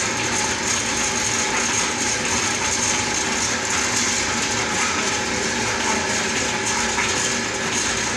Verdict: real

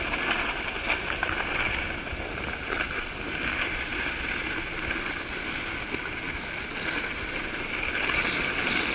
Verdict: real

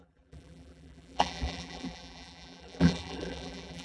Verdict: fake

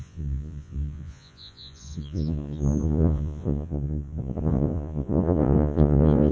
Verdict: fake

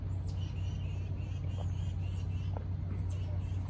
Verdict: real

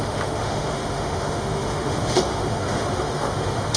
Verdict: fake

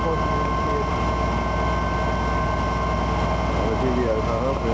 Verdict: fake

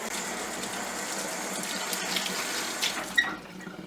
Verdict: real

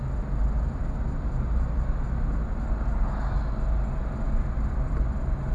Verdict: real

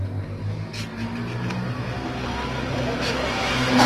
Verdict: real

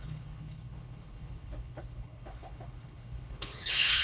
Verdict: fake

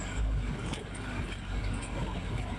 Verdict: fake